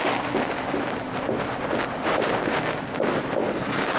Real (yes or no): yes